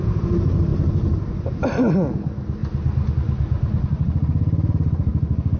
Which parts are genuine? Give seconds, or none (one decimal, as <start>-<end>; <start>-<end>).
0.0-0.7; 1.5-5.6